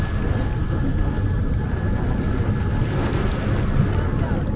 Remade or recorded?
recorded